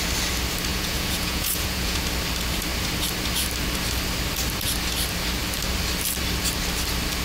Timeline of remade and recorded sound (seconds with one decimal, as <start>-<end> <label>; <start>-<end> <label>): 0.0-0.7 recorded; 0.7-2.0 remade; 2.0-7.2 recorded